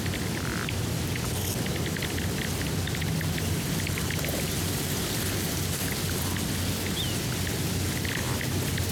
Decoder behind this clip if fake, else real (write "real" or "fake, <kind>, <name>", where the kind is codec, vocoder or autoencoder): real